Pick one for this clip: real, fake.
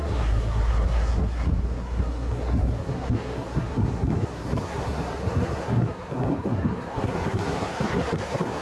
fake